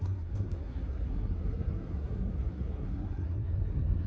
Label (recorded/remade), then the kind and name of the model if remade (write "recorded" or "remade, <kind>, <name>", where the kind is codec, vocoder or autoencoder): remade, codec, SNAC